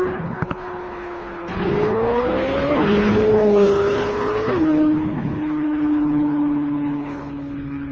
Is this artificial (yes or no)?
yes